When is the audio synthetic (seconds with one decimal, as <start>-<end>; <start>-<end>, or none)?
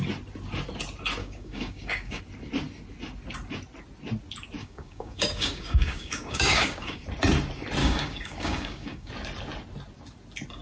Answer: 1.2-2.2; 4.6-7.0; 7.8-9.1